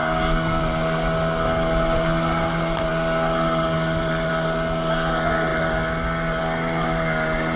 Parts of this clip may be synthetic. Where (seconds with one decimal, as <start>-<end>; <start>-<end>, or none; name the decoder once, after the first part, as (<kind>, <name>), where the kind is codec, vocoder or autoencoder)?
0.0-0.6 (codec, DAC)